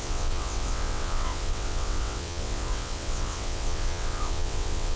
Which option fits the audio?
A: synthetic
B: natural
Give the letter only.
A